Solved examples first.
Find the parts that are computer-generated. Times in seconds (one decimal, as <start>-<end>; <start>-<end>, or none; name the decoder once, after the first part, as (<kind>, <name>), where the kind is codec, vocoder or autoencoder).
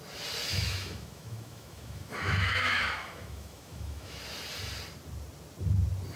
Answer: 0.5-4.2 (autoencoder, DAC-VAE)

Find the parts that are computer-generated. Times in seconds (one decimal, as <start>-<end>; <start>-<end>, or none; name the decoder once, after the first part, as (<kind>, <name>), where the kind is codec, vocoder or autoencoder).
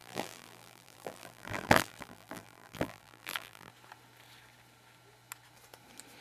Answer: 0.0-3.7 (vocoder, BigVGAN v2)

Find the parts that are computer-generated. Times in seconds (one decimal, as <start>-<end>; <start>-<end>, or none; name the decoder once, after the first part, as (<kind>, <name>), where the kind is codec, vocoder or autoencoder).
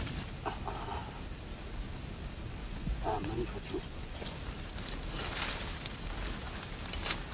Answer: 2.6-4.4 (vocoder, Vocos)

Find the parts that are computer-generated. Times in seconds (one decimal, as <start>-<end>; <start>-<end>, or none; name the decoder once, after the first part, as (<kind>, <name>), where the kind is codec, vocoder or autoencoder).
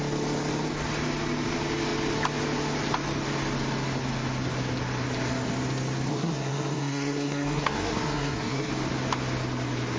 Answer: 6.1-8.7 (codec, SNAC)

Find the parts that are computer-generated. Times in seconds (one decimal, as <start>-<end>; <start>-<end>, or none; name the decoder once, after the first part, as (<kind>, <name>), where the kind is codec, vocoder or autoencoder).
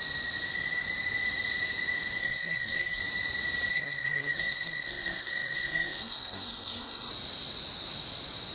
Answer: 2.2-3.0 (codec, SNAC); 3.7-7.1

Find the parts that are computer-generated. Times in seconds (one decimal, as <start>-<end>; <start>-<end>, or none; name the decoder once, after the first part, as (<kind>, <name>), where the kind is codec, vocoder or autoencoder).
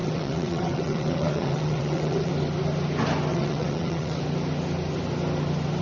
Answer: 0.0-2.3 (vocoder, WaveNeXt); 3.3-4.2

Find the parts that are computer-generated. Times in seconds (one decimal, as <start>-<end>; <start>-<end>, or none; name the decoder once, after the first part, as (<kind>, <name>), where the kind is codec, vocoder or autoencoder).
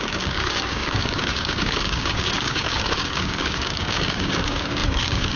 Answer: 0.0-5.4 (codec, DAC)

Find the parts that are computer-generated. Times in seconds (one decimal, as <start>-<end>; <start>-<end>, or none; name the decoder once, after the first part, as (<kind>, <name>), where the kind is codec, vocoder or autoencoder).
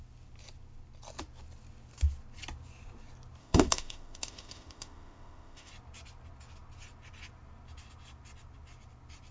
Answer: 3.4-5.7 (autoencoder, DAC-VAE)